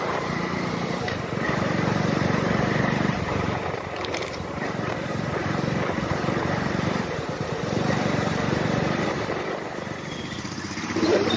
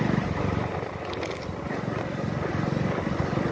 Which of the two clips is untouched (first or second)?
second